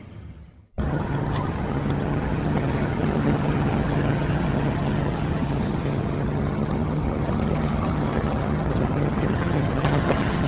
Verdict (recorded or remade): remade